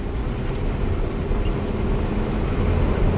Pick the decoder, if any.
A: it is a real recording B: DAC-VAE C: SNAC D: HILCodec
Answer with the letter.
A